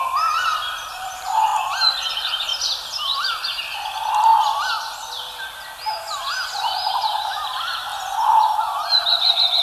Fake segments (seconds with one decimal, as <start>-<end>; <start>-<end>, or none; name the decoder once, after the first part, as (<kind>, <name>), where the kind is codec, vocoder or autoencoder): 0.0-1.5 (vocoder, BigVGAN v2); 2.1-2.5; 6.5-7.9; 8.4-9.6